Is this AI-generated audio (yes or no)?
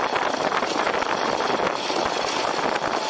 no